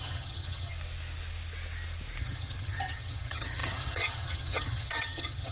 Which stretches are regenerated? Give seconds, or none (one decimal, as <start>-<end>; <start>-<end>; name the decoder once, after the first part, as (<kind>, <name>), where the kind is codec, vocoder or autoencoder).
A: 0.0-0.7 (vocoder, HiFi-GAN); 2.2-5.5